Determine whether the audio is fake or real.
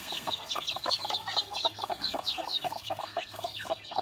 fake